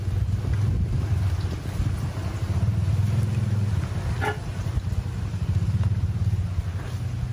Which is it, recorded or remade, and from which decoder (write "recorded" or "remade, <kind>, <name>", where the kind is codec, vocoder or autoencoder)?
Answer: recorded